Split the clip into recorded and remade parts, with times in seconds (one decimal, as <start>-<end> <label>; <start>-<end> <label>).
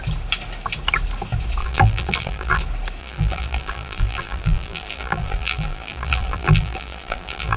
0.0-1.6 recorded; 1.6-2.6 remade; 2.6-3.0 recorded; 3.0-7.6 remade